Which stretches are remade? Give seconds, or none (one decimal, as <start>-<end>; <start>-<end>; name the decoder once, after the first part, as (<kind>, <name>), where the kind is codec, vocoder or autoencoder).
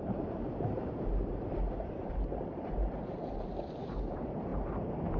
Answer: 0.0-5.2 (vocoder, BigVGAN v2)